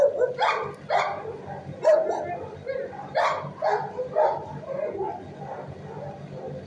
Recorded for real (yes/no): yes